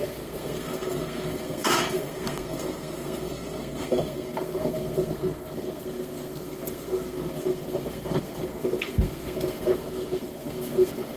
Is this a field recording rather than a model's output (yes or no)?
no